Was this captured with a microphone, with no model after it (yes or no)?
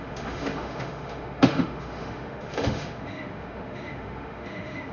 no